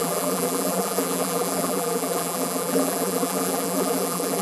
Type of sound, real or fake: fake